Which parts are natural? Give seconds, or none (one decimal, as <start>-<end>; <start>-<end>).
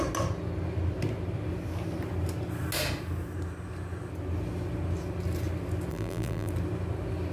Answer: 0.0-5.9; 6.5-7.3